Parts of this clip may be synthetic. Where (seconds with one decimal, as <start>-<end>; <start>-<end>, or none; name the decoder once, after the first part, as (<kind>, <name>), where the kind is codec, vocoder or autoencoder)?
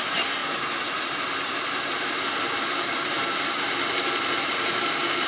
0.0-5.3 (vocoder, BigVGAN v2)